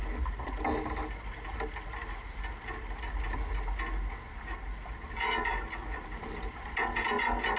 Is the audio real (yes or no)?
yes